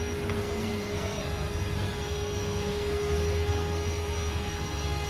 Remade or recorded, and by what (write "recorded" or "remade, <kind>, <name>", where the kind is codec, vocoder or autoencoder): remade, codec, SNAC